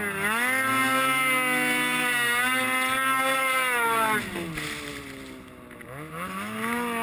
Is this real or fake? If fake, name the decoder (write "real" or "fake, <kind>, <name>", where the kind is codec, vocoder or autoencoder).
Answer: real